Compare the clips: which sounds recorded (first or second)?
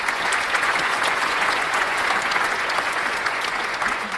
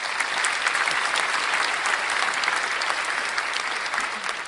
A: second